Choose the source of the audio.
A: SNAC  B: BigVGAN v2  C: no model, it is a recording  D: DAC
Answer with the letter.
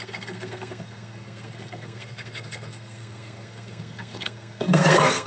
A